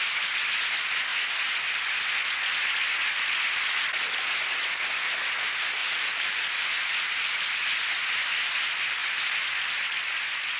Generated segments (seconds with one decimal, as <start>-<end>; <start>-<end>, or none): 5.8-6.4; 9.0-9.5